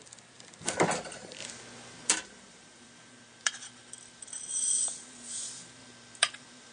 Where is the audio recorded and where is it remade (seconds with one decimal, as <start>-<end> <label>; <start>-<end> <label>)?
0.0-1.4 remade; 1.4-2.1 recorded; 2.1-6.7 remade